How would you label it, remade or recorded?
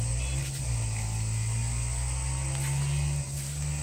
recorded